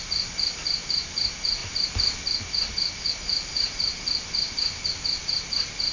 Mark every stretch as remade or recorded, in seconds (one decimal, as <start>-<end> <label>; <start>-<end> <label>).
0.0-5.9 recorded